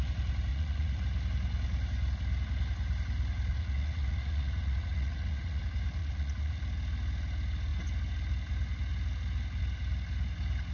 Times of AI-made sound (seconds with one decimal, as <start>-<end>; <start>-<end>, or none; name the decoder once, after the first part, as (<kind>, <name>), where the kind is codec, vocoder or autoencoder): 0.5-1.0 (vocoder, Vocos); 3.5-5.6; 6.0-6.6